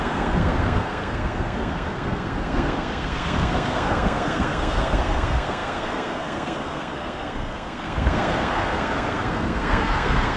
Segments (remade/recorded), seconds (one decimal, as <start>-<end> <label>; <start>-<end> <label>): 0.0-10.4 remade

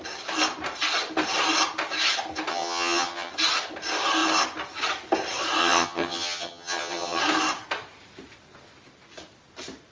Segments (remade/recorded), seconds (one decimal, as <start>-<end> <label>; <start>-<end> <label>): 0.0-2.5 recorded; 2.5-3.3 remade; 3.3-5.6 recorded; 5.6-7.2 remade; 7.2-9.9 recorded

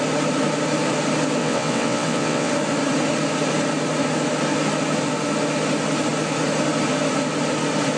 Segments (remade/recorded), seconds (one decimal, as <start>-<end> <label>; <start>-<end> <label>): 0.0-1.4 recorded; 1.4-2.5 remade; 2.5-8.0 recorded

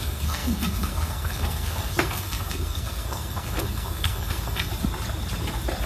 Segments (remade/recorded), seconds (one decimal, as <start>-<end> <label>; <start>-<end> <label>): 0.0-4.7 remade; 4.7-5.9 recorded

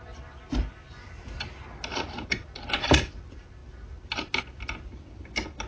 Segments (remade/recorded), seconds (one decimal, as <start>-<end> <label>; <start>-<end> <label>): 0.0-5.7 recorded

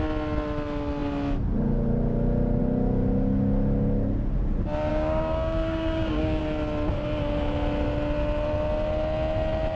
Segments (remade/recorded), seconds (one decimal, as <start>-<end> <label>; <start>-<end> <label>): 0.0-4.9 recorded; 4.9-6.4 remade; 6.4-9.7 recorded

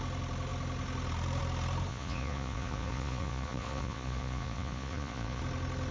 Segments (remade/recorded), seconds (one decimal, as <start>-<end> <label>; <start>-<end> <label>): 0.0-1.9 recorded; 1.9-5.4 remade; 5.4-5.9 recorded